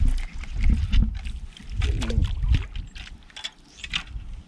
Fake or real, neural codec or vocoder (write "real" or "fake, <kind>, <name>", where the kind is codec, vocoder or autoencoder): real